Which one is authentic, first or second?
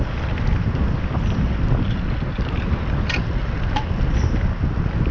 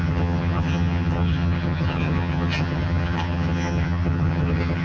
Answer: first